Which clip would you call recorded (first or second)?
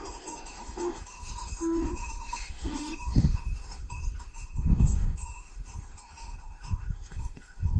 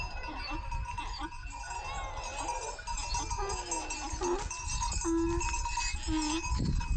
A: second